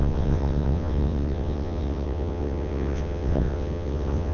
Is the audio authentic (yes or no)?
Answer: no